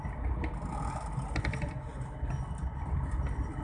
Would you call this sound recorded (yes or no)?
yes